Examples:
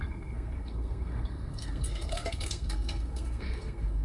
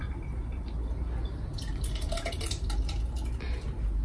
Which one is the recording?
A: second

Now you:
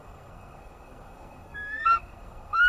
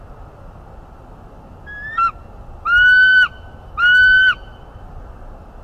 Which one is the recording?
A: second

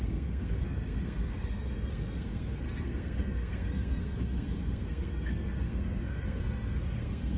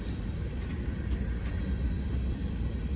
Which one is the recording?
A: second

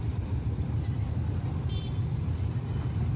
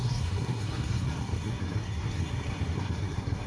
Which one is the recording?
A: first